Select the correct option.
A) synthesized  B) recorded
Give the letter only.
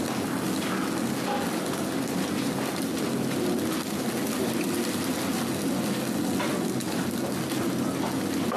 B